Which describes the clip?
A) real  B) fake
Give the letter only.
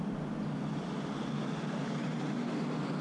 A